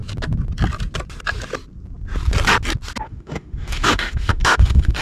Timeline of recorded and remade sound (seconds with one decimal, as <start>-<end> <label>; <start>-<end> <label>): 0.0-3.0 recorded; 3.0-5.0 remade